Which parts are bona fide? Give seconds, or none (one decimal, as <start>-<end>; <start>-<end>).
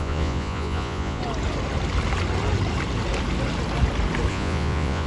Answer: 1.2-4.3